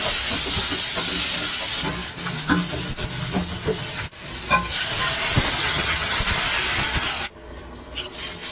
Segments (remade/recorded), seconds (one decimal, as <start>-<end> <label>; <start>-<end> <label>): 0.0-5.6 recorded; 5.6-6.2 remade; 6.2-8.5 recorded